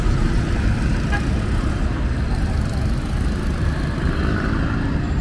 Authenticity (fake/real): real